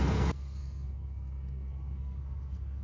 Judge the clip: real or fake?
fake